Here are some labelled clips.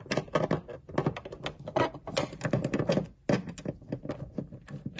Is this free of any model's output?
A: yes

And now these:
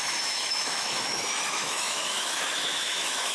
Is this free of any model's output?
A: no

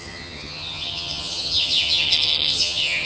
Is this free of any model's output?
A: no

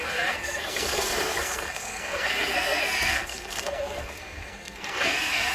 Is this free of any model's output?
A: no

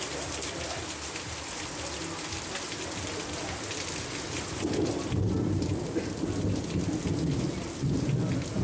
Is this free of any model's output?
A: yes